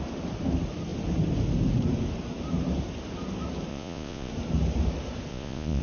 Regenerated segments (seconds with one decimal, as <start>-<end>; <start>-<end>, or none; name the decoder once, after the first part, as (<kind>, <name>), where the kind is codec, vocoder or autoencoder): 3.7-4.3 (vocoder, Vocos); 5.3-5.8